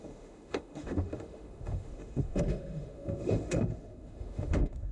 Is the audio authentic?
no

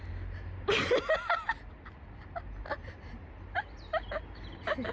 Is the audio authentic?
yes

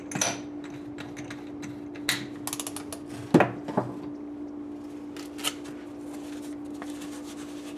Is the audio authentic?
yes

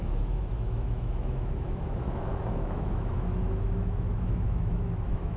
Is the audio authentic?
no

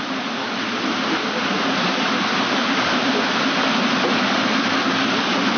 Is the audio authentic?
yes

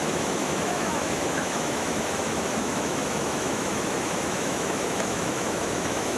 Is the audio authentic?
no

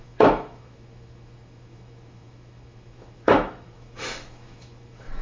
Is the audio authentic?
no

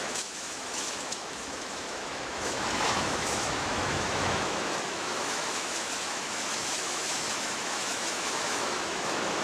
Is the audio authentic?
no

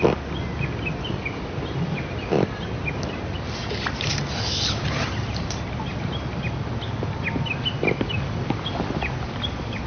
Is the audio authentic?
yes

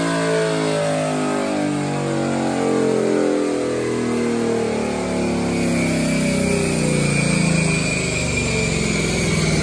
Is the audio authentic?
yes